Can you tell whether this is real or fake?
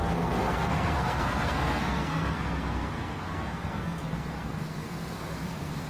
fake